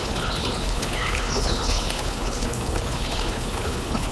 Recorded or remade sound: remade